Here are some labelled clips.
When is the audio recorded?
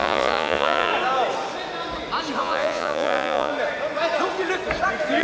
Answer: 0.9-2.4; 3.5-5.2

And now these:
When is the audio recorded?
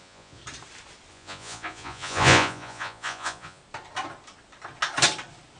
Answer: 0.4-1.1; 3.6-5.6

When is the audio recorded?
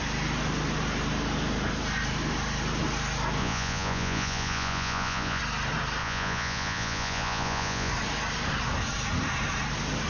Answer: 0.0-3.4; 5.4-6.0; 7.9-10.1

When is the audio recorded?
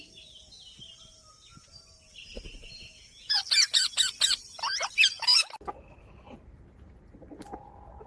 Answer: 0.0-2.6; 3.4-8.1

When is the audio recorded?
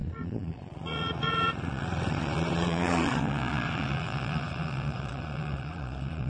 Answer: none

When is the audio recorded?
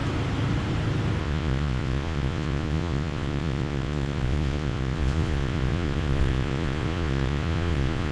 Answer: 0.0-1.2